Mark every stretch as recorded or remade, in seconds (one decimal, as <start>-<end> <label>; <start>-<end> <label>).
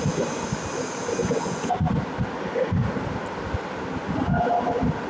0.0-1.2 recorded; 1.2-1.9 remade; 1.9-5.1 recorded